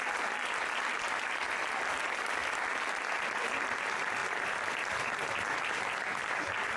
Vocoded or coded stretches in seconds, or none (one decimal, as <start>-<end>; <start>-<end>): none